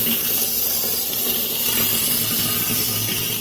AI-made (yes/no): no